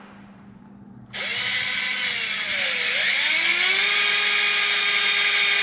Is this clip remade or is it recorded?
recorded